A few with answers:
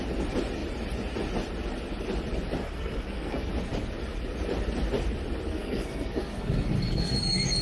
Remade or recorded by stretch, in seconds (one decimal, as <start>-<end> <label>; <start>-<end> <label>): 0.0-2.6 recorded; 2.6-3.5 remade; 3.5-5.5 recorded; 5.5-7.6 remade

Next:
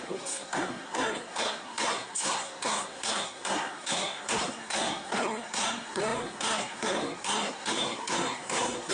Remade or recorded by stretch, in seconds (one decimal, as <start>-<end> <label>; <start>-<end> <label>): 0.0-8.9 remade

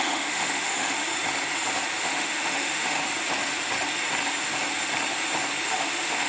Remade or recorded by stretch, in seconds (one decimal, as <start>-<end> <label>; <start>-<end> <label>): 0.0-1.1 remade; 1.1-2.0 recorded; 2.0-3.0 remade; 3.0-5.7 recorded; 5.7-6.3 remade

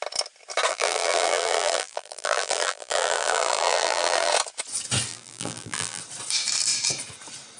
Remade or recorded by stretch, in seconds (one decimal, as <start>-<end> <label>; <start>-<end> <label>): 0.0-0.7 recorded; 0.7-4.3 remade; 4.3-5.1 recorded; 5.1-6.0 remade; 6.0-7.6 recorded

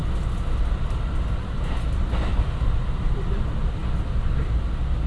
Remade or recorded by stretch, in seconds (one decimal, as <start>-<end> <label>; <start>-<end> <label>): 0.0-5.1 recorded